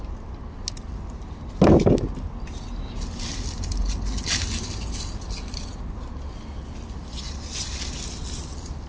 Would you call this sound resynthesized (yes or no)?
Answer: no